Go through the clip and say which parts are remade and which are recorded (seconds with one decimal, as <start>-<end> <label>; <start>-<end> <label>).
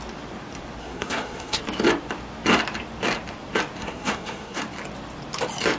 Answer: 0.0-0.8 recorded; 0.8-1.6 remade; 1.6-3.8 recorded; 3.8-4.6 remade; 4.6-5.8 recorded